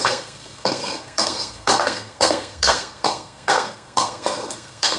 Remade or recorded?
remade